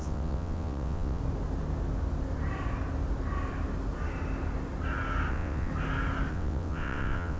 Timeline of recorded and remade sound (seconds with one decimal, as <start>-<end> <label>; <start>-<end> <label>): 0.0-1.2 remade; 1.2-5.3 recorded; 5.3-5.7 remade; 5.7-6.3 recorded; 6.3-7.4 remade